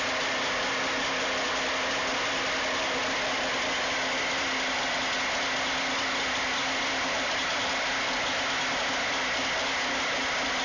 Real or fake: real